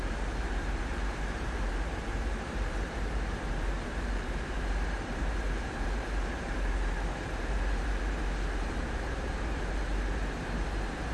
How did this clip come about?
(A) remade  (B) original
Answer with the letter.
A